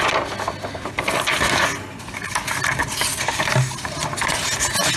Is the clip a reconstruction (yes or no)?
no